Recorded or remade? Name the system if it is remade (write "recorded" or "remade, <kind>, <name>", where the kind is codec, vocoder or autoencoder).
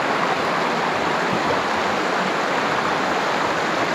recorded